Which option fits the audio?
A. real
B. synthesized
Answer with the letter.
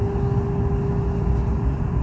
A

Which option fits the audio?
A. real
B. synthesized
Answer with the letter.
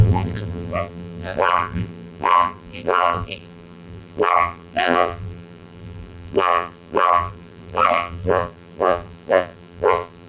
B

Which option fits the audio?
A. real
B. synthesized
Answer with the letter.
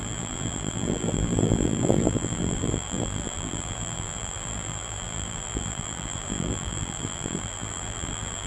B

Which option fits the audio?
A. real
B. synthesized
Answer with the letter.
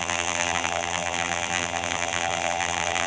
B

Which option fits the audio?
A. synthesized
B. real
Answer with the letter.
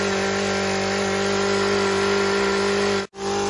B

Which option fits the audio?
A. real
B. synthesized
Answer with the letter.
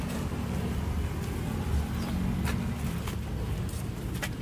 A